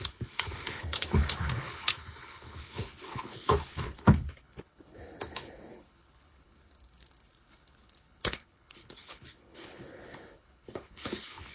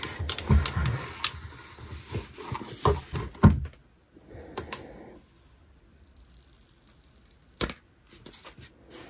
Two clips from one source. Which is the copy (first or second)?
first